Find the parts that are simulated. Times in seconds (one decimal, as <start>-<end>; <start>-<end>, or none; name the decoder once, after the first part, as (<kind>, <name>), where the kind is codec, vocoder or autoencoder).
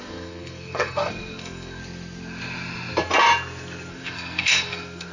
0.0-1.8 (codec, SNAC); 3.9-5.1